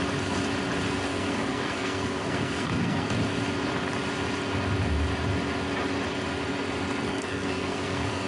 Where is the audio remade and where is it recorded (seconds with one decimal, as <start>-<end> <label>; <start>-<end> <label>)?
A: 0.0-1.1 recorded; 1.1-3.1 remade; 3.1-7.1 recorded; 7.1-8.3 remade